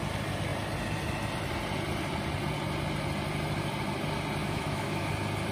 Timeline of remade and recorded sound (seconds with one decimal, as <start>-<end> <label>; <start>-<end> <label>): 0.0-4.4 recorded; 4.4-5.1 remade; 5.1-5.5 recorded

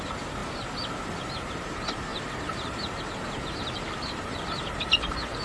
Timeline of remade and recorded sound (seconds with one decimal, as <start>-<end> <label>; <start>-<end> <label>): 0.0-0.4 remade; 0.4-1.5 recorded; 1.5-5.4 remade

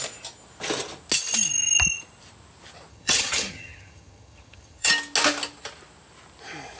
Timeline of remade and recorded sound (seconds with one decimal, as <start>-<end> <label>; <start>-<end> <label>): 0.0-2.9 recorded; 2.9-4.9 remade; 4.9-6.8 recorded

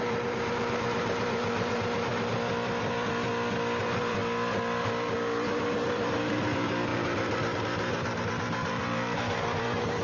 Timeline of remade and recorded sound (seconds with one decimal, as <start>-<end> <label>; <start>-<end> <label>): 0.0-2.1 remade; 2.1-2.8 recorded; 2.8-3.3 remade; 3.3-3.8 recorded; 3.8-4.2 remade; 4.2-4.8 recorded; 4.8-10.0 remade

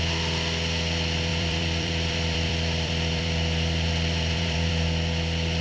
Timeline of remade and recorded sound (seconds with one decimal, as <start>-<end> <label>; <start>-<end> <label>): 0.0-1.3 recorded; 1.3-4.7 remade; 4.7-5.6 recorded